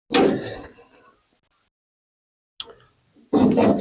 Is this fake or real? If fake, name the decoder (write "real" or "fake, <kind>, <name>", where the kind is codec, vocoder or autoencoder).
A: real